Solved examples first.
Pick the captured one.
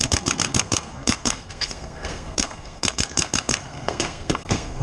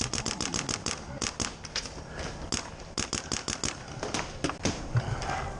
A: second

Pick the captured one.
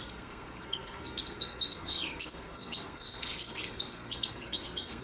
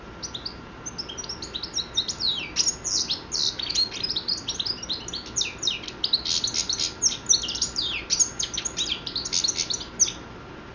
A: second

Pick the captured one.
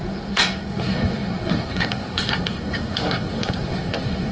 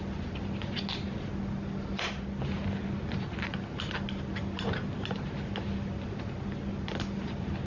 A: second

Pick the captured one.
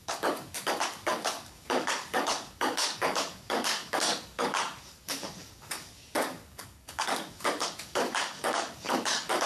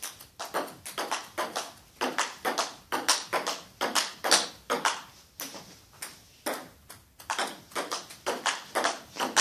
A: second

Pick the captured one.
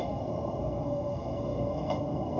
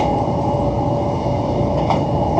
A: second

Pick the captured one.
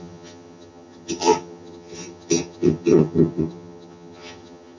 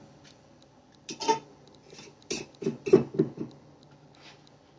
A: second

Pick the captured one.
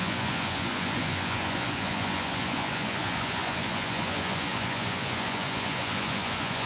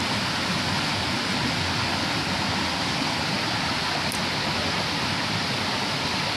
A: second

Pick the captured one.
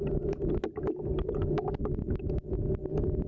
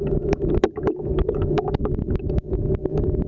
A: first